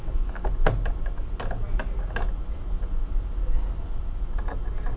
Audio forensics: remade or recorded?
recorded